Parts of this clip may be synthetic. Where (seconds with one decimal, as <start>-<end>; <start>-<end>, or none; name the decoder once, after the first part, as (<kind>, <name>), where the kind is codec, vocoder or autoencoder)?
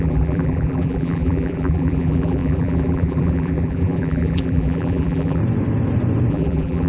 0.0-5.4 (vocoder, BigVGAN v2); 6.3-6.9